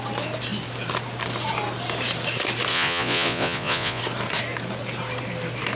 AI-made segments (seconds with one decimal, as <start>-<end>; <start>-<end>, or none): 2.7-4.0